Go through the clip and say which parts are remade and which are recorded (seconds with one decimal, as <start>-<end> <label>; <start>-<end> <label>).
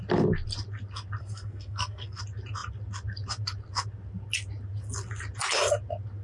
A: 0.0-1.2 recorded; 1.2-2.2 remade; 2.2-6.2 recorded